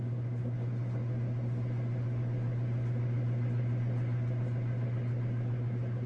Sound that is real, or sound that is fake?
real